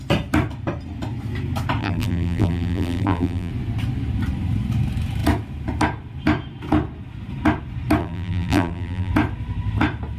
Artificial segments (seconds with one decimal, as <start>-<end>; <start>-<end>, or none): 1.8-3.5; 8.0-9.1